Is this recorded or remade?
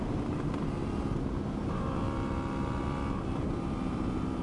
remade